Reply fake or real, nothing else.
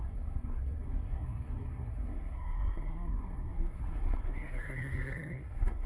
fake